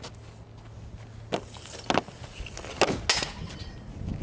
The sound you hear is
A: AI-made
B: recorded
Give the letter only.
B